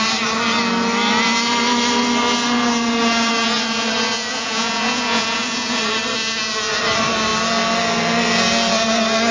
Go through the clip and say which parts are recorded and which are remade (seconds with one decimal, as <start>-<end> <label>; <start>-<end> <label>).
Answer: 0.0-4.3 recorded; 4.3-5.8 remade; 5.8-9.3 recorded